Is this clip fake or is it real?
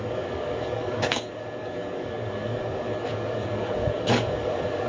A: fake